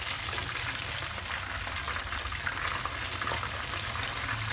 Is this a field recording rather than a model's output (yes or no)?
yes